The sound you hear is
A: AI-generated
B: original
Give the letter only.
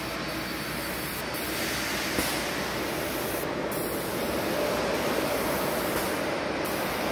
B